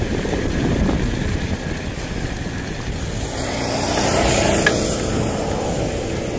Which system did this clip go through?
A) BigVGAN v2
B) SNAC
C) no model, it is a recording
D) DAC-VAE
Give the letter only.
C